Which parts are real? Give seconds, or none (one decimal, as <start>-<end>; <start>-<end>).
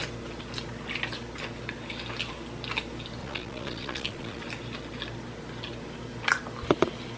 0.0-3.2; 4.4-7.2